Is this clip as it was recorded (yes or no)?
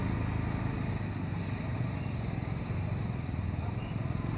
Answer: yes